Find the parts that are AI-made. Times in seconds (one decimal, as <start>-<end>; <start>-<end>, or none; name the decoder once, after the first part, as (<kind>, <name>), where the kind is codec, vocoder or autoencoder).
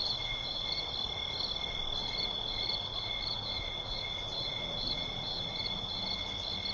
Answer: 0.0-0.8 (vocoder, Vocos); 2.0-6.0